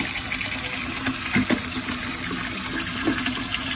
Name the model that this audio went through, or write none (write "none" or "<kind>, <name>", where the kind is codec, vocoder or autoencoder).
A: none